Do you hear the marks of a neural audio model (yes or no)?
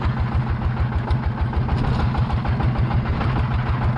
no